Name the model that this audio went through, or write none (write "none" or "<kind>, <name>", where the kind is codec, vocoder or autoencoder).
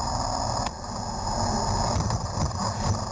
none